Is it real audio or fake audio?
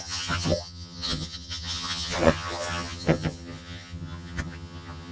fake